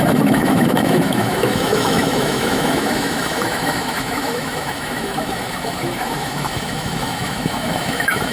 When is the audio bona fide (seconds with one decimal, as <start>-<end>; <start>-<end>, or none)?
none